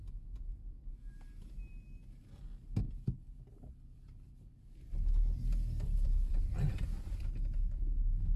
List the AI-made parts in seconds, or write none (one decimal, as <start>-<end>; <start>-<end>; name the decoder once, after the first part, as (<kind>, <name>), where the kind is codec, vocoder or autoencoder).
2.8-6.5 (vocoder, BigVGAN v2)